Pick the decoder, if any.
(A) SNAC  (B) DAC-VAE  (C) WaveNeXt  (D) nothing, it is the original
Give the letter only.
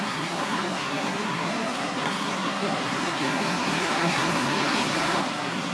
A